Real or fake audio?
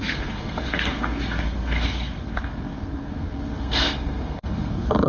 fake